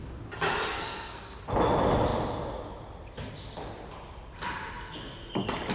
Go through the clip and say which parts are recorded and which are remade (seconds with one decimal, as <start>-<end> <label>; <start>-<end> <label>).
0.0-0.7 recorded; 0.7-1.4 remade; 1.4-5.7 recorded